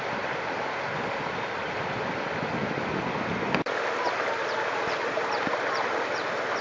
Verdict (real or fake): real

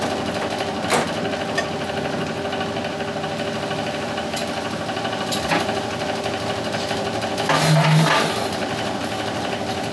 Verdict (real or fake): real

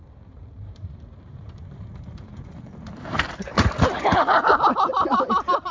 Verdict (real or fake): fake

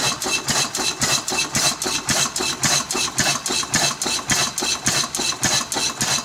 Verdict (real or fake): real